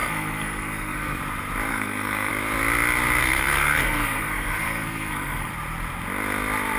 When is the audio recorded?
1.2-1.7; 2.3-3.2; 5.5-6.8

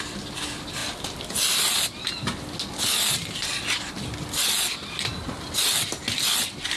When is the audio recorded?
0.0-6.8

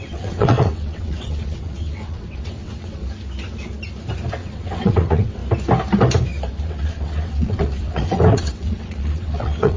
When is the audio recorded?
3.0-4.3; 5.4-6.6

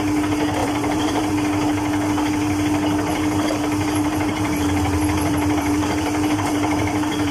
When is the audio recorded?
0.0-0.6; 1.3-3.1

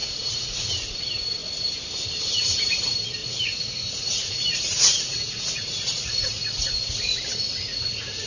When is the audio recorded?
0.7-3.2

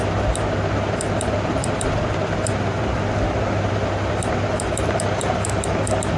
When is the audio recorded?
none

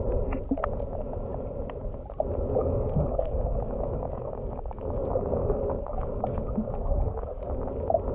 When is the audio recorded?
0.0-2.6; 7.3-8.1